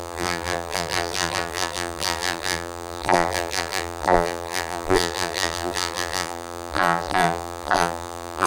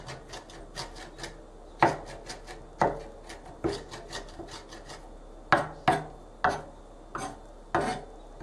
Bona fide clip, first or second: second